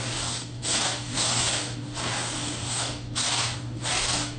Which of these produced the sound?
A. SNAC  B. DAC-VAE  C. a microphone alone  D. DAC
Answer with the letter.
D